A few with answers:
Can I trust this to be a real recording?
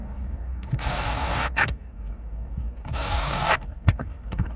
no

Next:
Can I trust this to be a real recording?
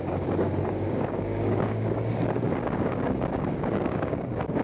no